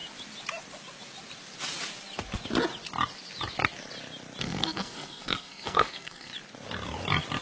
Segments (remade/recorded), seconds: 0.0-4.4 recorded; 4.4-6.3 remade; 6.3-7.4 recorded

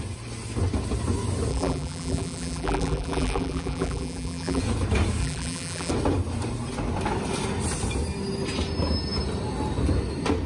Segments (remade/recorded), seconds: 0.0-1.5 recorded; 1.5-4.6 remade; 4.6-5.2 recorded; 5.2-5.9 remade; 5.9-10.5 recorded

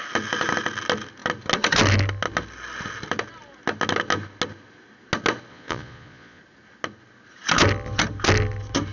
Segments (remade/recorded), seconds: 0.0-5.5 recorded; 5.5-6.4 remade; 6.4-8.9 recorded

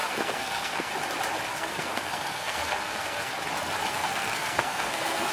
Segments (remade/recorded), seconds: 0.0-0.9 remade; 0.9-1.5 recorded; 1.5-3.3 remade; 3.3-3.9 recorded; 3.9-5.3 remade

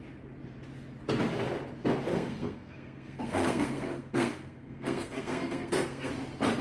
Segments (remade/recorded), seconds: 0.0-2.1 recorded; 2.1-6.1 remade; 6.1-6.6 recorded

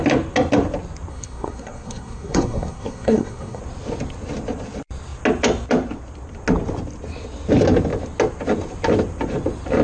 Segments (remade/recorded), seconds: 0.0-1.1 recorded; 1.1-3.6 remade; 3.6-9.8 recorded

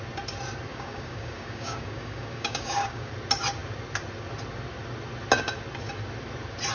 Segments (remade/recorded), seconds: 0.0-0.7 recorded; 0.7-3.1 remade; 3.1-6.7 recorded

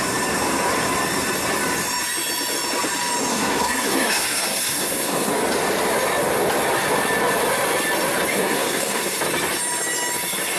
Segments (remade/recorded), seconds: 0.0-3.3 recorded; 3.3-5.3 remade; 5.3-8.3 recorded; 8.3-9.2 remade; 9.2-10.6 recorded